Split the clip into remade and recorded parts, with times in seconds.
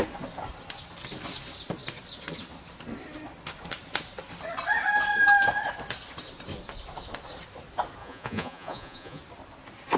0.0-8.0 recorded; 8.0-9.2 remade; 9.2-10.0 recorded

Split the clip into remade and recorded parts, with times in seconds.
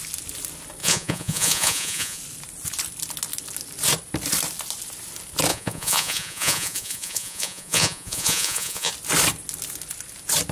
0.0-0.8 recorded; 0.8-2.2 remade; 2.2-5.5 recorded; 5.5-8.9 remade; 8.9-10.5 recorded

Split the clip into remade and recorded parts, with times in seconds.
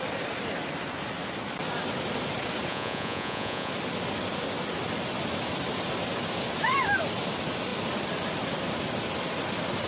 0.0-2.7 recorded; 2.7-3.7 remade; 3.7-9.9 recorded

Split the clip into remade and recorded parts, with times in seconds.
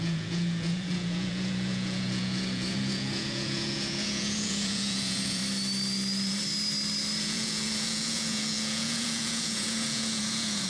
0.0-5.4 remade; 5.4-7.2 recorded; 7.2-10.7 remade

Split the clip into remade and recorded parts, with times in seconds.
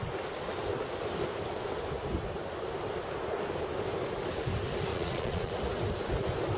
0.0-4.9 recorded; 4.9-5.5 remade; 5.5-6.6 recorded